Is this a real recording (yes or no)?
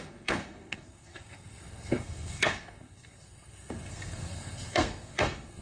no